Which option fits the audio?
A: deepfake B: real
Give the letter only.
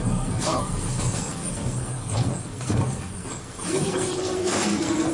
A